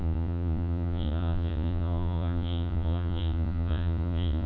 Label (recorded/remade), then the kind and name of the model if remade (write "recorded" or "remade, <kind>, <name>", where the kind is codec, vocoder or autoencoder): remade, vocoder, Vocos